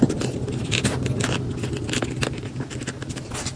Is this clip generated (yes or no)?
no